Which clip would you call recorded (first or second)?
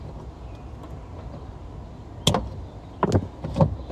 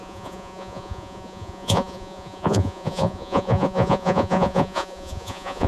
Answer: first